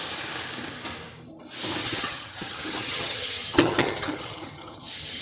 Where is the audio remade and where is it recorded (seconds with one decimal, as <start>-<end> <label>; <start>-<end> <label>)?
0.0-1.8 recorded; 1.8-5.2 remade